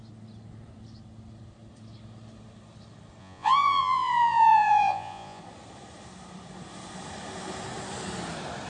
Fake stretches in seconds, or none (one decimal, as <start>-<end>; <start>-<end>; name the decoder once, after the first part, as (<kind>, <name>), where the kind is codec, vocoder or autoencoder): 3.2-5.4 (vocoder, Vocos)